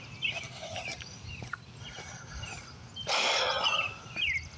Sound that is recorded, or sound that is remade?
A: recorded